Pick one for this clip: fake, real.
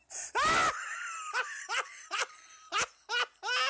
real